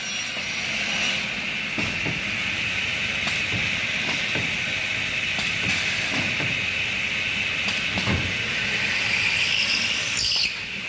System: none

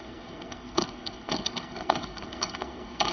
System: codec, SNAC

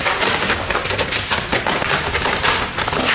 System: none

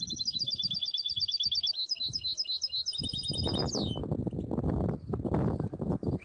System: none